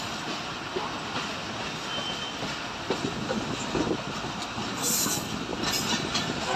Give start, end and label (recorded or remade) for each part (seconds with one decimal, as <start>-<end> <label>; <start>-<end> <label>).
0.0-6.6 recorded